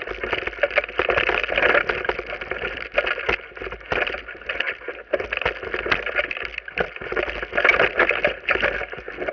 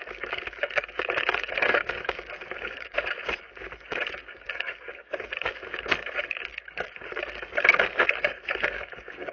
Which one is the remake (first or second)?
second